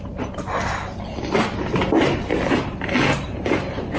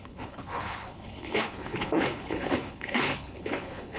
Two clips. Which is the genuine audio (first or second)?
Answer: first